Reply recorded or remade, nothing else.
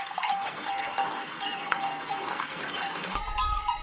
remade